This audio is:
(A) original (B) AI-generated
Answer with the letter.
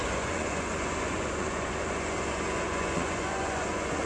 B